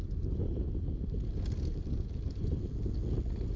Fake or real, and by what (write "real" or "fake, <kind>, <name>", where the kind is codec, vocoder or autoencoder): real